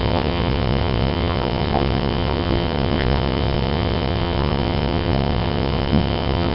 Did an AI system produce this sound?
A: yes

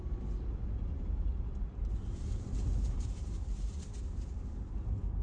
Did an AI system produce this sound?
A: no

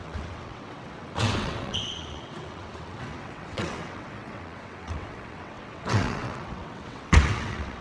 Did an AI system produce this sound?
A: yes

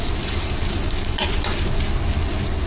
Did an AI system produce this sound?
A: no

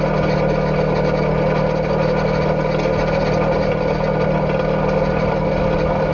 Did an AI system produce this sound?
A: no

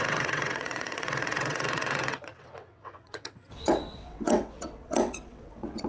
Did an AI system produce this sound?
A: yes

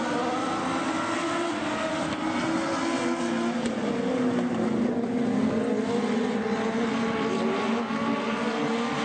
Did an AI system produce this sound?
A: no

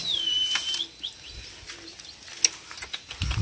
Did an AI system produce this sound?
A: no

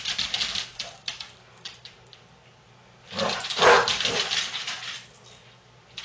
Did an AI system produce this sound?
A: no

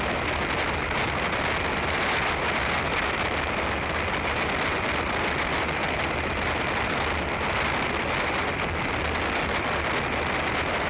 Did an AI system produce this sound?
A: no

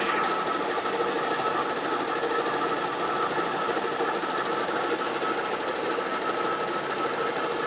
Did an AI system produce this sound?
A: no